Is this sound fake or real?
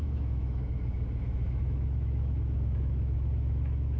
fake